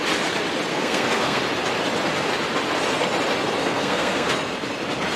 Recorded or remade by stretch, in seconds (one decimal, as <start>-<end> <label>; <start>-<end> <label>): 0.0-0.7 recorded; 0.7-1.4 remade; 1.4-3.6 recorded; 3.6-4.3 remade; 4.3-5.2 recorded